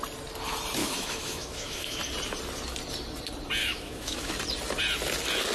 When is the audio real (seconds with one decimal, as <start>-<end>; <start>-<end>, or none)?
0.0-0.8; 2.0-3.6; 4.3-5.5